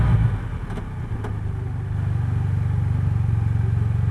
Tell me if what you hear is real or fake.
real